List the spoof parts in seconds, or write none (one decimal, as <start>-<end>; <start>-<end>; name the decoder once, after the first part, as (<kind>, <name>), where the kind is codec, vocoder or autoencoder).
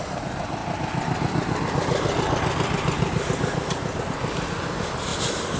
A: none